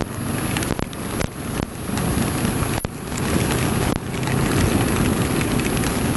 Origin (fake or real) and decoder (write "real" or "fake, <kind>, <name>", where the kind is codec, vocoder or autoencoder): real